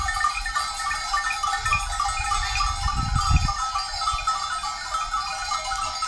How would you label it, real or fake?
real